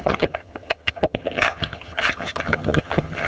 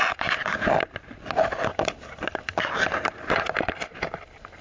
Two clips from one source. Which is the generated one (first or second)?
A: first